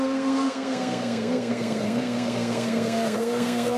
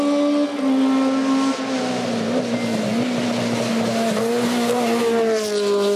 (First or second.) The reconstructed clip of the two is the first